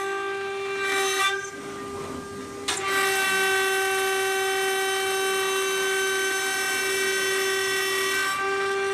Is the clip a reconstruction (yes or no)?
no